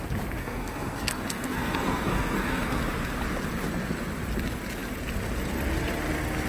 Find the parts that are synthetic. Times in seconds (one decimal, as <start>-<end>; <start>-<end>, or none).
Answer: 0.4-2.8

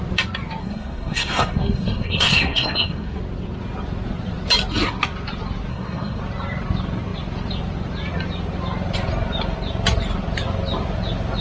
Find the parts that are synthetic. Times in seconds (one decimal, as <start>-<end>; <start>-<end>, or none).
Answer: 0.6-3.2; 5.7-6.2

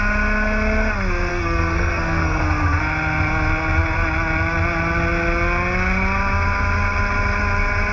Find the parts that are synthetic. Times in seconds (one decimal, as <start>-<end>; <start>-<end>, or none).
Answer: 1.3-2.4

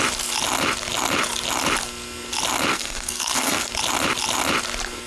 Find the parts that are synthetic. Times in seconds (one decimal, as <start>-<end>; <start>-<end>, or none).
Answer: 2.7-3.7

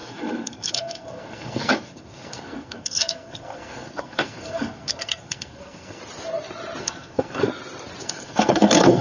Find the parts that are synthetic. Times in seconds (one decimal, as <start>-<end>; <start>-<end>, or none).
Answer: 0.0-6.0; 6.8-7.5; 8.0-9.0

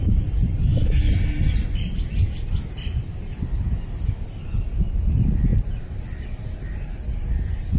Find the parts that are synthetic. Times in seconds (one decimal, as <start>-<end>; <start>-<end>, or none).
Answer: none

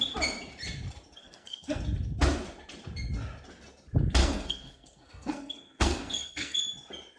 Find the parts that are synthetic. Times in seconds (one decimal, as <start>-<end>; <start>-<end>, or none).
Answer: 1.2-1.8; 4.2-6.6